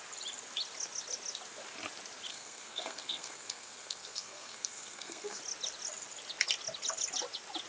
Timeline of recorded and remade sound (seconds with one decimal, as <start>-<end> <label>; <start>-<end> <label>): 0.0-2.3 recorded; 2.3-5.4 remade; 5.4-7.7 recorded